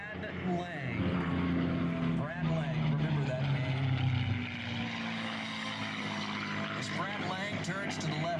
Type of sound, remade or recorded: recorded